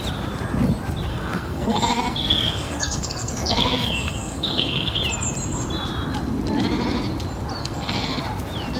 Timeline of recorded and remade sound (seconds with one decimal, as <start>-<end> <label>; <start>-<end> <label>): 0.0-1.1 recorded; 1.1-5.0 remade; 5.0-7.6 recorded; 7.6-8.2 remade; 8.2-8.8 recorded